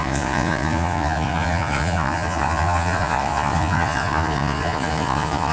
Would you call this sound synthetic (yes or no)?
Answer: yes